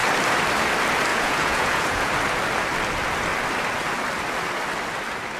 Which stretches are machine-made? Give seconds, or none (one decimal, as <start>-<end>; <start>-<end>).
1.1-2.1